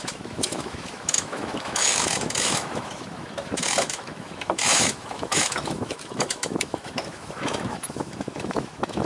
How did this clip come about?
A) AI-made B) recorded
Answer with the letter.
A